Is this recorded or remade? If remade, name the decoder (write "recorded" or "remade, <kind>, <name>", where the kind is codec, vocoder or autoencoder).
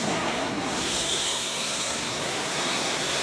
remade, codec, SNAC